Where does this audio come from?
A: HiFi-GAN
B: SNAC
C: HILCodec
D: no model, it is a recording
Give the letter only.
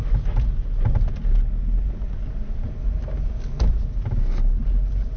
D